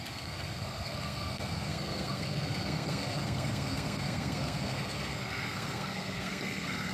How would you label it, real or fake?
fake